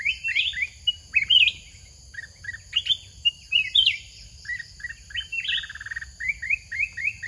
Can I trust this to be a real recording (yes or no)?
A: yes